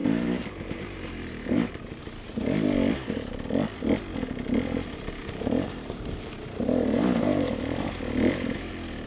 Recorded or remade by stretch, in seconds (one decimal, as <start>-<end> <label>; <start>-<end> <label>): 0.0-2.0 remade; 2.0-5.2 recorded; 5.2-8.7 remade; 8.7-9.1 recorded